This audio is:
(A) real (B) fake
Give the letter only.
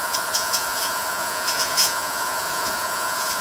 B